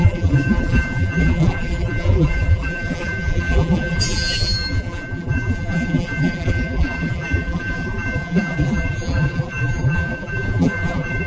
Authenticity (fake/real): fake